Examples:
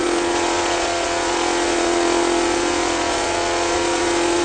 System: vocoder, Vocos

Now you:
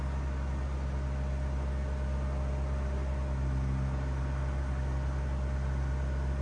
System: none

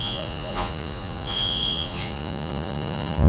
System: vocoder, Vocos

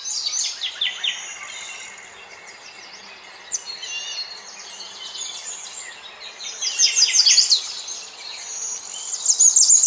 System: none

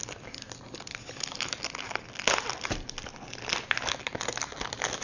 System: none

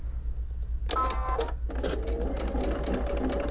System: none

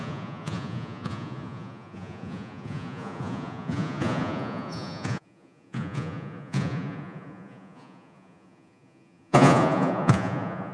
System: vocoder, Vocos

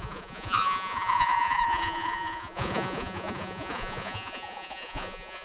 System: vocoder, Vocos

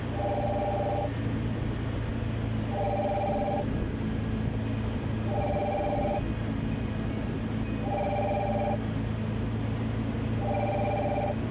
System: none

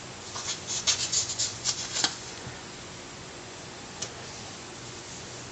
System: vocoder, Vocos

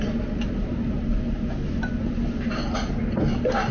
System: none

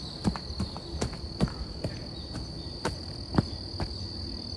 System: none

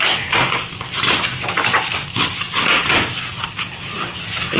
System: none